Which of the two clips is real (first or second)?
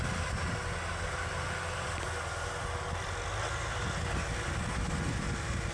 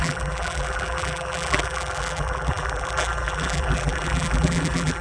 first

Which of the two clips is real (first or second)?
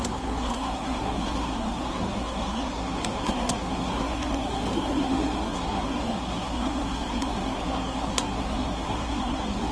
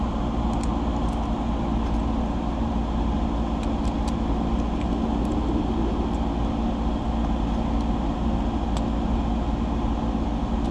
second